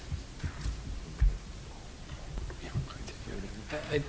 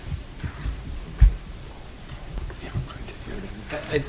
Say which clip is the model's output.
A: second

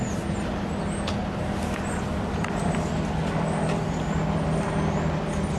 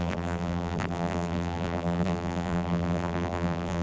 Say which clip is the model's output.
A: second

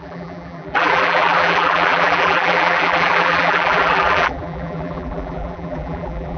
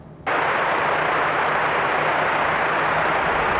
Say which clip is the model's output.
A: first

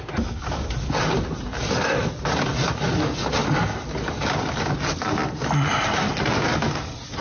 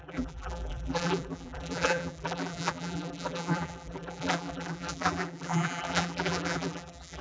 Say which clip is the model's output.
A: second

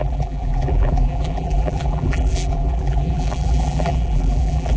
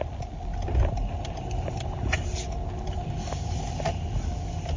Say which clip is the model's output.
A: first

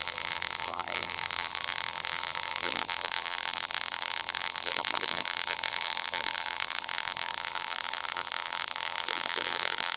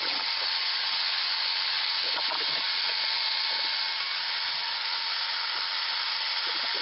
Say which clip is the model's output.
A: first